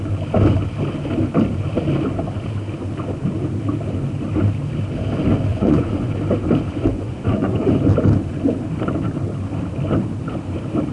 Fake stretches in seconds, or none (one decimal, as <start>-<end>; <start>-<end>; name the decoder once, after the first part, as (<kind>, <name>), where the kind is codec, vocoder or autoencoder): 5.5-6.1 (vocoder, Vocos); 6.9-7.8